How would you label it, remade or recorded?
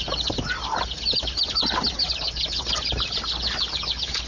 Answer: recorded